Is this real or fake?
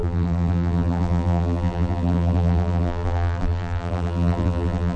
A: fake